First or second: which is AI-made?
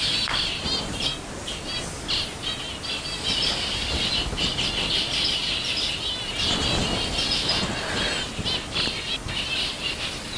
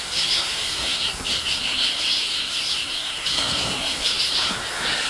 second